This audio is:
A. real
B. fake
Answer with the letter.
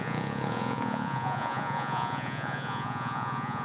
B